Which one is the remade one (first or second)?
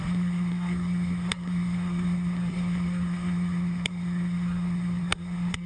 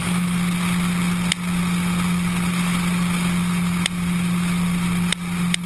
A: first